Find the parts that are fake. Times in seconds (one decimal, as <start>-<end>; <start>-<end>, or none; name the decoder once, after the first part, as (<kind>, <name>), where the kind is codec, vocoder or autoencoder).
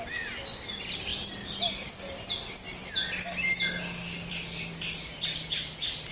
none